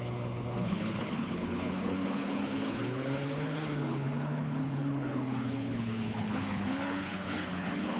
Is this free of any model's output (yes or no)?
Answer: no